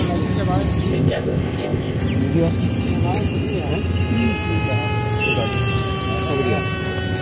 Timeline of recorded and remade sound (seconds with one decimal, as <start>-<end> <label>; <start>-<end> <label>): 0.0-0.9 recorded; 0.9-2.0 remade; 2.0-7.2 recorded